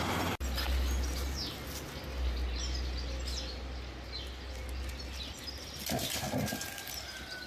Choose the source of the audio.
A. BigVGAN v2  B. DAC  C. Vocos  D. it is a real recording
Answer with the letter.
D